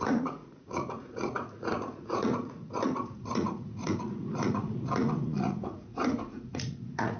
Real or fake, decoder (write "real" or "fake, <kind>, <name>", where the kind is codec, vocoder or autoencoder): fake, vocoder, Vocos